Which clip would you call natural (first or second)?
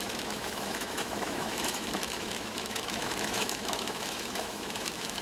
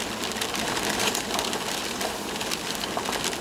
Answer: second